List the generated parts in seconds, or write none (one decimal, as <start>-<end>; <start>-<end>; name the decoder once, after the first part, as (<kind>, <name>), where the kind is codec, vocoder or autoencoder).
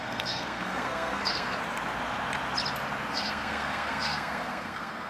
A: 0.0-1.6 (codec, SNAC); 3.1-5.1